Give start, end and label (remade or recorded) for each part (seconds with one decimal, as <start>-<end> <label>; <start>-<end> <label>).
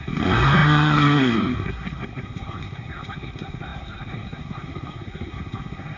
0.0-6.0 remade